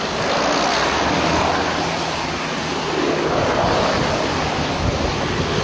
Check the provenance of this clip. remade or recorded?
recorded